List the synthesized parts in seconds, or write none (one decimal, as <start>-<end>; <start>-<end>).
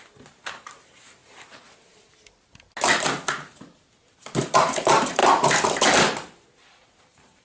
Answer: 0.0-1.2; 4.4-5.2; 7.0-7.4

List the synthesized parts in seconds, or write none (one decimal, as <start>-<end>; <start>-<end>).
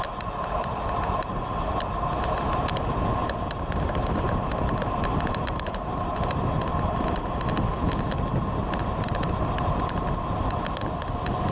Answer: 3.2-6.4